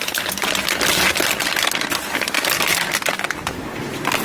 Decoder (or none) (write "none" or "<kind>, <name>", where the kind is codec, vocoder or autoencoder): none